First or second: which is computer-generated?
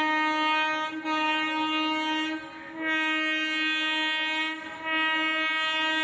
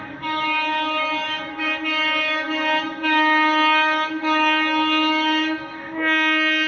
second